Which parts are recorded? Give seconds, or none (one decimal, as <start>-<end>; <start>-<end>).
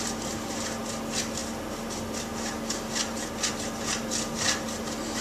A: 0.0-5.2